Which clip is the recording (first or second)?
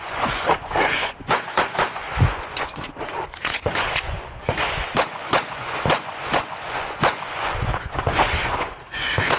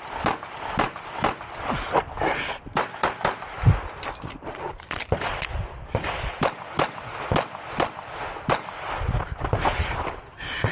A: second